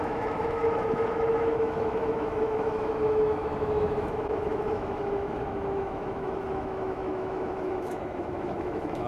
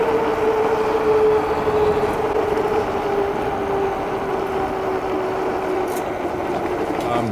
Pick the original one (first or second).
second